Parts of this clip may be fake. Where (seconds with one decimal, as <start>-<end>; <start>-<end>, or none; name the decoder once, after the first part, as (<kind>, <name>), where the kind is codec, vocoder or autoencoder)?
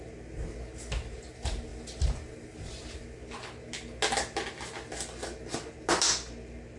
none